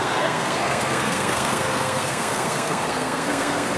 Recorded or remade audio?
remade